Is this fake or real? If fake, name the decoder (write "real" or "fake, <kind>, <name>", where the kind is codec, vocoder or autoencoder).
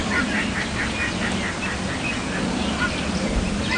real